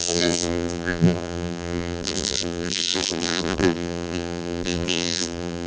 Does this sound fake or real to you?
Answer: fake